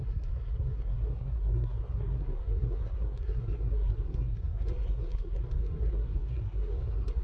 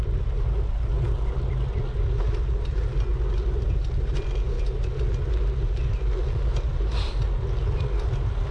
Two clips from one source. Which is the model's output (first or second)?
first